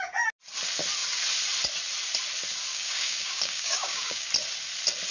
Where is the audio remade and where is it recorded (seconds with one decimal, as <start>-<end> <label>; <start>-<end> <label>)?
0.0-2.7 recorded; 2.7-4.3 remade; 4.3-5.1 recorded